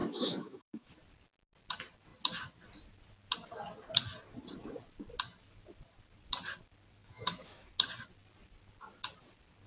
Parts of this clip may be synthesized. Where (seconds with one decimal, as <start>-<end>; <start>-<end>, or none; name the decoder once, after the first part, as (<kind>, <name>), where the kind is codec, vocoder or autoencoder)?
0.0-0.9 (autoencoder, DAC-VAE); 7.0-7.7